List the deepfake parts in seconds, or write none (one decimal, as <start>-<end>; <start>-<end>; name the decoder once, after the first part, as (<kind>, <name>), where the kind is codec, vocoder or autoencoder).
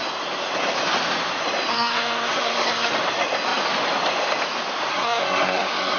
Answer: 1.7-2.9 (codec, SNAC); 4.9-6.0